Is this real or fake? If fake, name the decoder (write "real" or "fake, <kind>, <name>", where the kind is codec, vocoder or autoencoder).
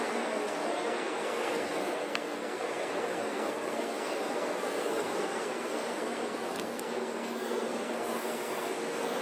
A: fake, codec, SNAC